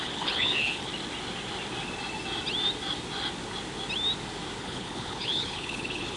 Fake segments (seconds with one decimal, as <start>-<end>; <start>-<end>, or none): 0.0-0.9; 4.6-6.2